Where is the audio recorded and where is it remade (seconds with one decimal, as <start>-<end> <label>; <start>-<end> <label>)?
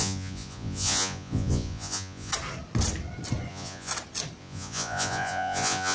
0.0-2.3 remade; 2.3-3.5 recorded; 3.5-3.9 remade; 3.9-4.4 recorded; 4.4-5.9 remade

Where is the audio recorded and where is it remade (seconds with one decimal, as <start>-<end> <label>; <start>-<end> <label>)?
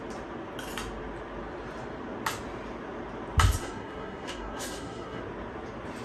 0.0-3.6 recorded; 3.6-5.2 remade; 5.2-6.0 recorded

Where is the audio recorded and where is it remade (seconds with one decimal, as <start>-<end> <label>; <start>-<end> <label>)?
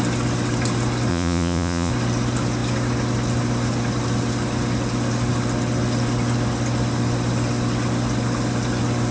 0.0-1.1 recorded; 1.1-1.9 remade; 1.9-9.1 recorded